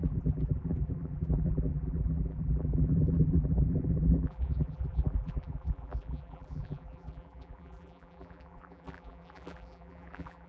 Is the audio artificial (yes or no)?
yes